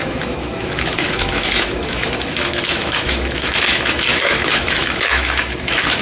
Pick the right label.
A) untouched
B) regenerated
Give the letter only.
B